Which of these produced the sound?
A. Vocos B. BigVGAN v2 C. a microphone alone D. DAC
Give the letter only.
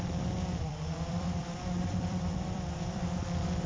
B